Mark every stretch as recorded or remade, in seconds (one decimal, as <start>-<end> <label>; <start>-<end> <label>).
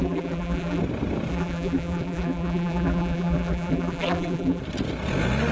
0.0-0.8 remade; 0.8-1.3 recorded; 1.3-4.6 remade; 4.6-5.5 recorded